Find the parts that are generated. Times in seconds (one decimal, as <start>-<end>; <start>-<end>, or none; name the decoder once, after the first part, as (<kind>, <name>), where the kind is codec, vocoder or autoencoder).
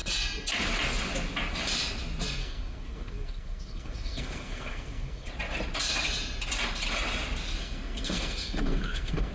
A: 2.4-5.3 (codec, SNAC); 7.6-9.3